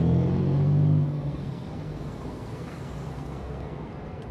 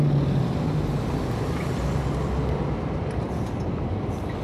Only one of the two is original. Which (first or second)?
second